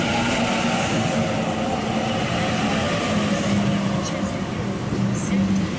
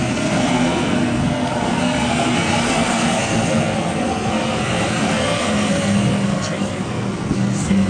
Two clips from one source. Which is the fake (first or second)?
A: second